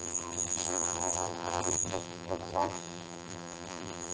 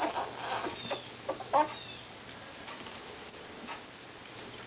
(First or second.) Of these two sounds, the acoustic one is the second